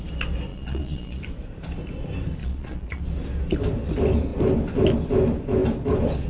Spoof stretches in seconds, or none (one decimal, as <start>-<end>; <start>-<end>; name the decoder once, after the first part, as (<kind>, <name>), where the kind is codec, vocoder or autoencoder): 0.5-1.2 (vocoder, Vocos); 2.4-3.0